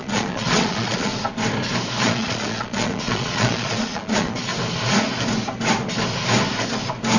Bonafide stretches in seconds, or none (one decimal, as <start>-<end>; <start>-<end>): 1.1-2.0; 4.5-7.2